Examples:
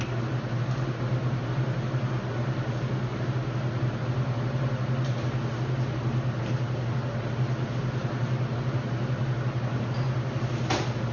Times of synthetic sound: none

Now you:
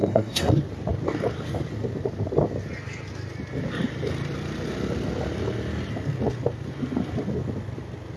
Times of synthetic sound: 0.0-0.5 (codec, SNAC)

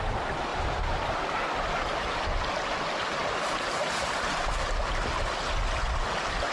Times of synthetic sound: none

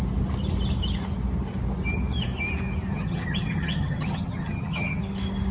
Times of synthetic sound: 2.9-5.0 (vocoder, HiFi-GAN)

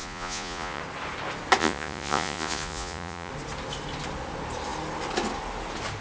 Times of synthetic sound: 0.0-0.8 (vocoder, Vocos); 1.6-3.3

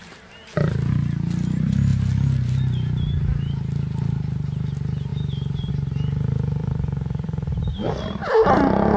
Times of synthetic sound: 5.1-5.7 (vocoder, BigVGAN v2); 6.6-7.7